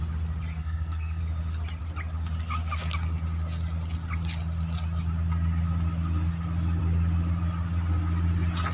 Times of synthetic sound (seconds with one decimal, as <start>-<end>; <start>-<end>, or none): 0.6-1.2